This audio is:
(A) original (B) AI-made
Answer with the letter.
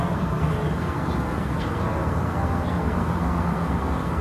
B